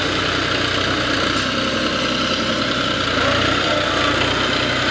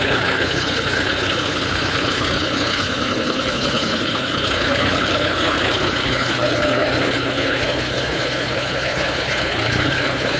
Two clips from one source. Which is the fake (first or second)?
second